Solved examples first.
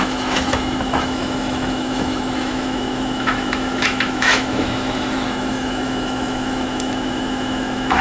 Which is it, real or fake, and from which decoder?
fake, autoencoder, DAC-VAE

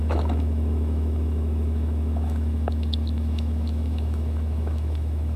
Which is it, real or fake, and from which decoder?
fake, autoencoder, DAC-VAE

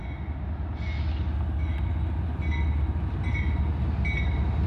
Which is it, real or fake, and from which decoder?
real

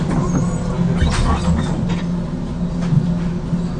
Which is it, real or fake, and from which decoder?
real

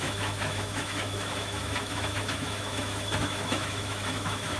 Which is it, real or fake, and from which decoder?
fake, autoencoder, DAC-VAE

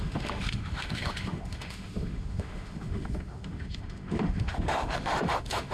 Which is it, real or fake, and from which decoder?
fake, autoencoder, DAC-VAE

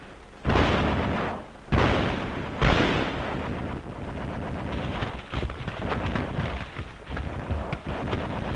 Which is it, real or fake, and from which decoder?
real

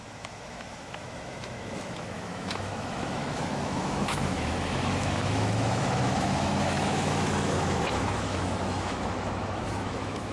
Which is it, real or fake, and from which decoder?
fake, autoencoder, DAC-VAE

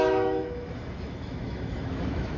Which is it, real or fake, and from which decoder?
fake, autoencoder, DAC-VAE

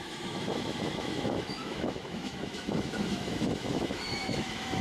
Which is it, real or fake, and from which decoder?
fake, autoencoder, DAC-VAE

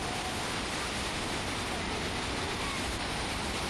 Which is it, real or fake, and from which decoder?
real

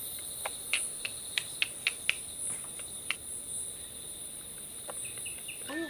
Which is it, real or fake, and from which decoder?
real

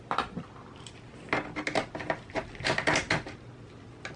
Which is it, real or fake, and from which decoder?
real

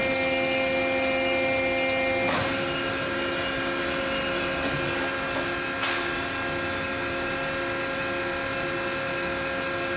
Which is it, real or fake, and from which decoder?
real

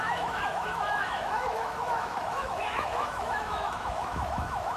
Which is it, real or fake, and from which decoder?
fake, autoencoder, DAC-VAE